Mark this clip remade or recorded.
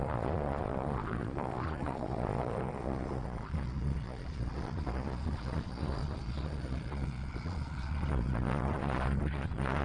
remade